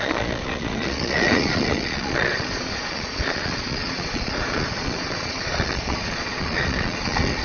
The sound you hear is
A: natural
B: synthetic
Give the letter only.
B